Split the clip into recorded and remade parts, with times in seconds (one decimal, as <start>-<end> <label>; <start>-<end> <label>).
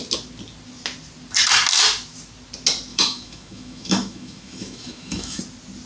0.0-2.9 recorded; 2.9-5.4 remade; 5.4-5.9 recorded